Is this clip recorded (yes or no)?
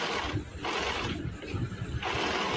no